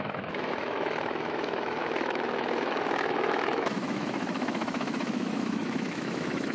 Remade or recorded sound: remade